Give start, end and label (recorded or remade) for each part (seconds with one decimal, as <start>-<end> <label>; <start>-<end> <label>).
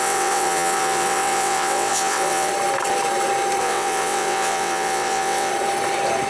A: 0.0-2.5 remade; 2.5-3.6 recorded; 3.6-5.5 remade; 5.5-6.3 recorded